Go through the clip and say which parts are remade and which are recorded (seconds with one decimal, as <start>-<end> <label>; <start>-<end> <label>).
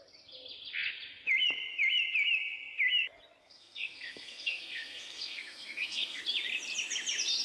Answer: 0.0-3.4 recorded; 3.4-6.2 remade; 6.2-7.4 recorded